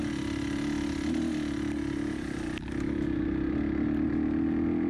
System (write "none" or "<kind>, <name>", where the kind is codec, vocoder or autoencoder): none